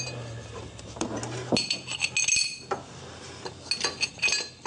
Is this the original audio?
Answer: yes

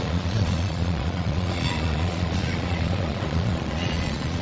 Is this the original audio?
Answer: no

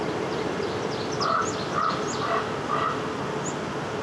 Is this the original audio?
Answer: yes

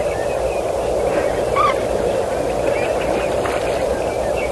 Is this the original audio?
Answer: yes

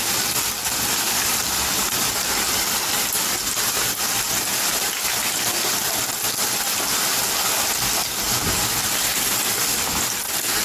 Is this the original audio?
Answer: yes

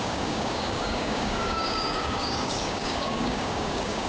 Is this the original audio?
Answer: no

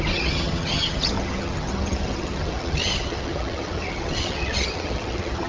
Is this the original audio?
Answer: no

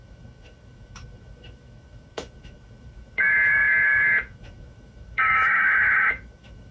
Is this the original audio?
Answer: no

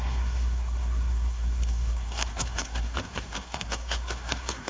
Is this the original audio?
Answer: no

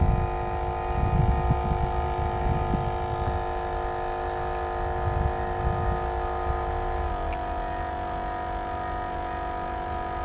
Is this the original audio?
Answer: yes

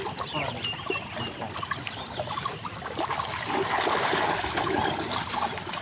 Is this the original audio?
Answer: yes